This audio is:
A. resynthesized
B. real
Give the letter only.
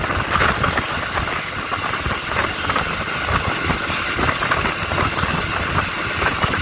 B